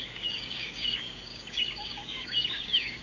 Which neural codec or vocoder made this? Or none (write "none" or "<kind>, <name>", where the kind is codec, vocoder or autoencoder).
codec, DAC